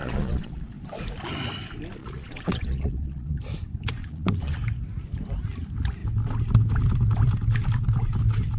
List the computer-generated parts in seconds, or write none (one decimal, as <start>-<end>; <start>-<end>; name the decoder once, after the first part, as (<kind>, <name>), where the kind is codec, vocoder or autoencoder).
0.0-0.7 (vocoder, Vocos); 2.0-3.4; 4.0-4.6